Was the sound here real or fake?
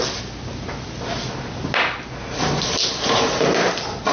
real